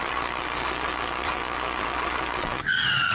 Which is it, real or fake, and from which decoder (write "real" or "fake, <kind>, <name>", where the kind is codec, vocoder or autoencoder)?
fake, vocoder, Vocos